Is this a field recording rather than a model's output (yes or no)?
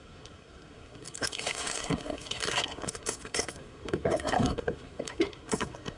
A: no